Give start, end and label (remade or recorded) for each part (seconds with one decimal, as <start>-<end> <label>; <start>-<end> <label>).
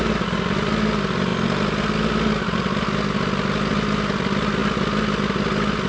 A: 0.0-5.9 recorded